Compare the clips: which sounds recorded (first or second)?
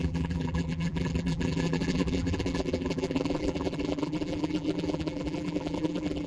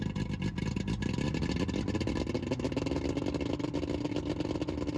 second